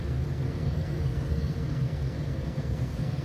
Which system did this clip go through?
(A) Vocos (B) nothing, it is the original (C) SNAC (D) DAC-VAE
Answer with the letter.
C